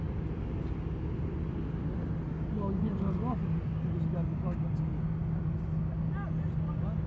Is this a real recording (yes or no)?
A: yes